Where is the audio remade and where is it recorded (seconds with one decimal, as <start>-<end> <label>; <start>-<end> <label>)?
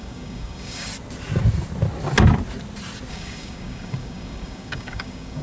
0.0-0.9 remade; 0.9-3.1 recorded; 3.1-5.4 remade